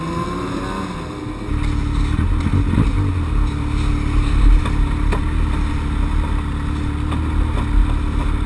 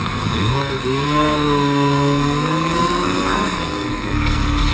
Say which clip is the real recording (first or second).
first